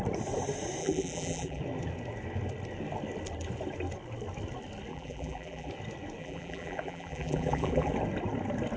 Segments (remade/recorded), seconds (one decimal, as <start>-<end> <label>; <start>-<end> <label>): 0.0-0.8 recorded; 0.8-1.6 remade; 1.6-4.9 recorded; 4.9-5.7 remade; 5.7-6.2 recorded; 6.2-7.9 remade; 7.9-8.8 recorded